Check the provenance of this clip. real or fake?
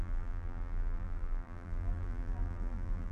fake